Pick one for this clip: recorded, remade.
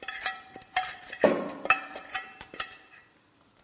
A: remade